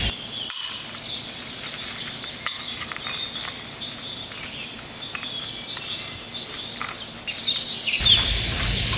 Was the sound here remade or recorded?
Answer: recorded